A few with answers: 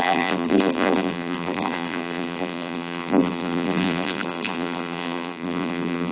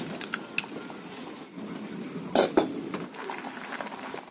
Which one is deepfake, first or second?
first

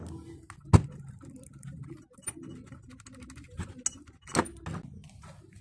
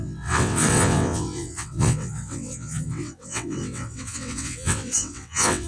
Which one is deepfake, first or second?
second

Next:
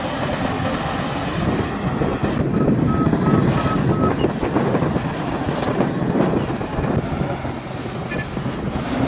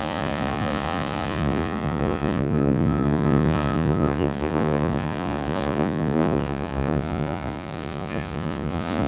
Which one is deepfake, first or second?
second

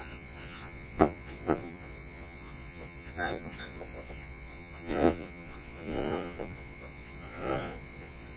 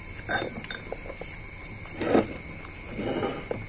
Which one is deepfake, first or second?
first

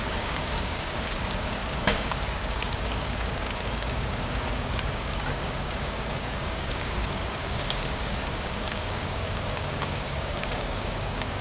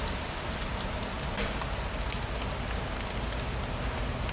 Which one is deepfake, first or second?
first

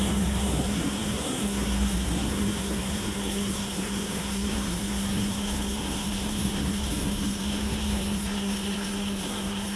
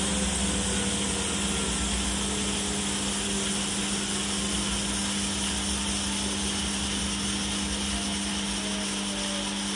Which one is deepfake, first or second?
first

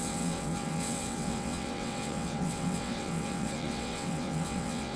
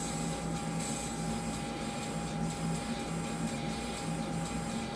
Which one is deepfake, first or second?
first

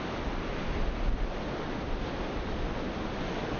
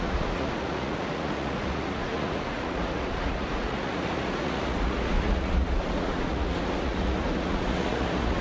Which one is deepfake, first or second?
second